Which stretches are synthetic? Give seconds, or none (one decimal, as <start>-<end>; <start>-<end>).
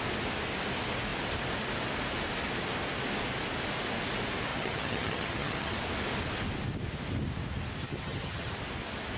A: 4.5-5.7; 7.8-8.5